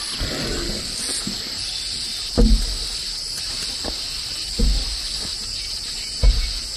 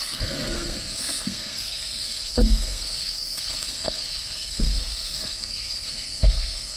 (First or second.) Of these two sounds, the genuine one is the first